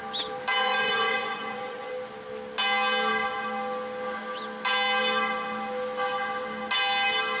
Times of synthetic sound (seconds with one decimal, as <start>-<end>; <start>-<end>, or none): 0.6-1.9